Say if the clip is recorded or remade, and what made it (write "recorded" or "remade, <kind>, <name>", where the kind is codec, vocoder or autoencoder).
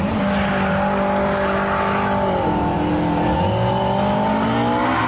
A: recorded